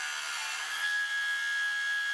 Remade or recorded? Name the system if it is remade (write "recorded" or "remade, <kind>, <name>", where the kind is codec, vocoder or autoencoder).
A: recorded